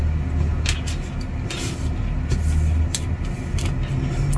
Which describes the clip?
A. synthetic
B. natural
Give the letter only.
B